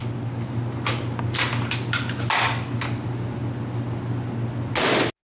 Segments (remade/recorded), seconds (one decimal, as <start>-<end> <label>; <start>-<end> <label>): 0.0-5.2 recorded